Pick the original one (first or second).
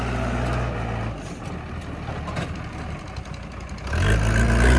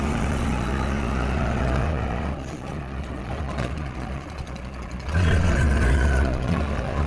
first